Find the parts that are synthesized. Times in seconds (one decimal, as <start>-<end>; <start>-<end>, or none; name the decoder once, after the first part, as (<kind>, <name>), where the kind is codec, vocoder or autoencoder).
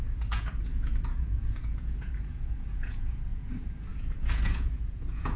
0.0-5.4 (vocoder, Vocos)